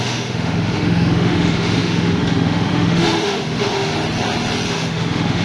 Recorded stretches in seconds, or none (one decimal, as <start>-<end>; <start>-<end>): 3.9-4.7